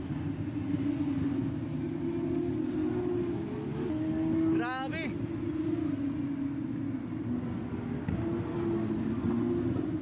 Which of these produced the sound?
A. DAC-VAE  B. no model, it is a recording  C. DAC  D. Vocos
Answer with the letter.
B